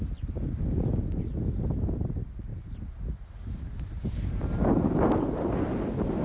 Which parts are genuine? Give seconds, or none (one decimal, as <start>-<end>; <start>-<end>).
0.0-6.2